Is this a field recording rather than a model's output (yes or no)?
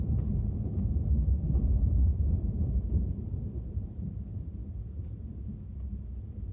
no